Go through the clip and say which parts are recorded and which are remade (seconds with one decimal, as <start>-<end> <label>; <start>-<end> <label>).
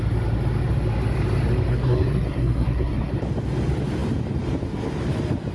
0.0-1.7 recorded; 1.7-3.1 remade; 3.1-5.5 recorded